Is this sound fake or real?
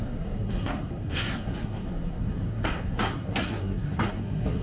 fake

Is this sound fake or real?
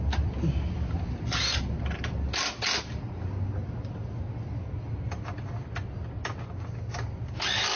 real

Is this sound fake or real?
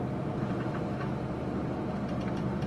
fake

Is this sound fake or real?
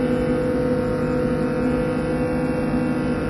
real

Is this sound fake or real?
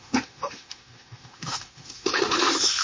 fake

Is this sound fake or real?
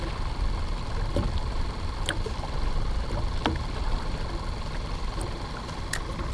real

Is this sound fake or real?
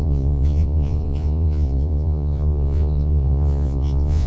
fake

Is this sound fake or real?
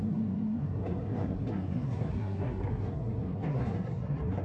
fake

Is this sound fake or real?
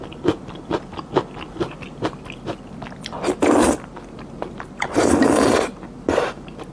real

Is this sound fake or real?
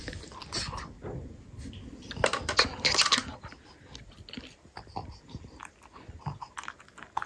real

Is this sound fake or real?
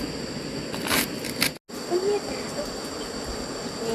real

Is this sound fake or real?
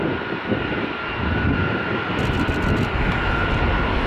real